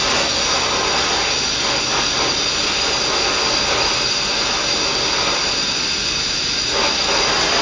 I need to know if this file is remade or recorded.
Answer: recorded